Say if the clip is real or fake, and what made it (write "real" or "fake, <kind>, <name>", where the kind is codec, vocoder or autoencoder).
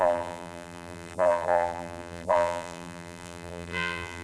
fake, vocoder, BigVGAN v2